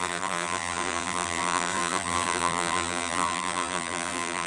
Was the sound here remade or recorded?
remade